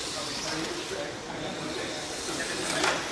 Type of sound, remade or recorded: recorded